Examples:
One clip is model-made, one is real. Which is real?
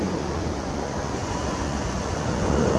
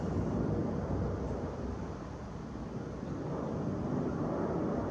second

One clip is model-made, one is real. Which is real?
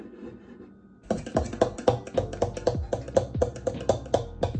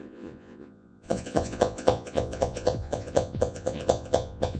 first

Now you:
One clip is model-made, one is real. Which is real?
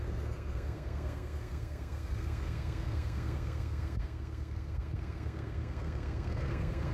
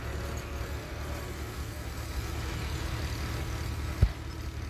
second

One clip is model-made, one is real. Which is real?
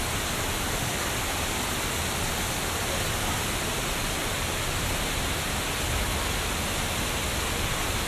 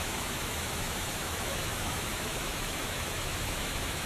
first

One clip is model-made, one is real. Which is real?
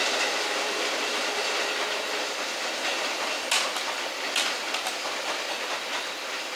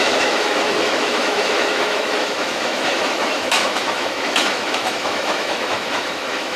first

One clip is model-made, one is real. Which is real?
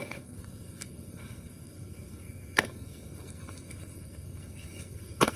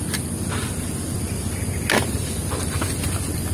second